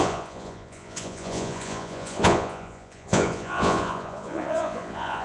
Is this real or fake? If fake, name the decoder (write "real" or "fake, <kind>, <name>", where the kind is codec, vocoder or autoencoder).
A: fake, vocoder, Vocos